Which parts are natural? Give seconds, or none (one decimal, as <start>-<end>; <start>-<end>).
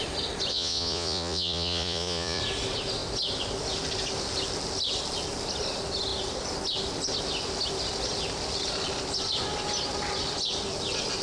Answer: 0.0-0.5; 2.4-11.2